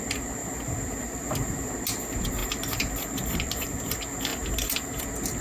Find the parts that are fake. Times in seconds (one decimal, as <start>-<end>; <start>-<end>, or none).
0.4-1.7; 2.4-3.8; 4.3-5.0